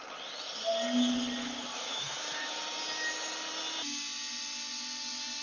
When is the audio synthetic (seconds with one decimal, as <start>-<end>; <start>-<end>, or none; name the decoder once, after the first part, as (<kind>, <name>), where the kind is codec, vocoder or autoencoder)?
1.4-2.6 (autoencoder, DAC-VAE)